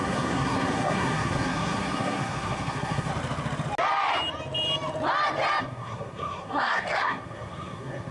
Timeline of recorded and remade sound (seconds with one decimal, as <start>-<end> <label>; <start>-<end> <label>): 0.0-3.1 remade; 3.1-5.6 recorded; 5.6-8.1 remade